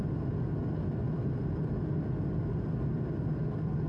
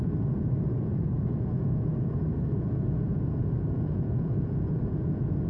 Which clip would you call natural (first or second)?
first